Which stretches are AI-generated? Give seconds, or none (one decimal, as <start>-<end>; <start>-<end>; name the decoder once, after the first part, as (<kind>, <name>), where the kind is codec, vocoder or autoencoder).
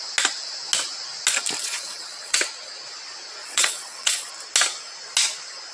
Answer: 1.6-2.4 (vocoder, WaveNeXt); 3.4-4.3